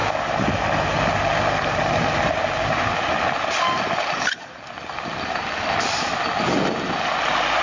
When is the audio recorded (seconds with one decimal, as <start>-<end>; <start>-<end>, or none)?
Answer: 0.0-7.6